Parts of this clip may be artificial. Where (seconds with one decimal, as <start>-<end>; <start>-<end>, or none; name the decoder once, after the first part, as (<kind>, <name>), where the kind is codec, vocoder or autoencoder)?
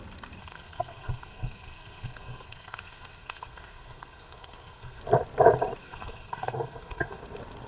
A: 0.4-5.0 (codec, SNAC); 5.8-7.2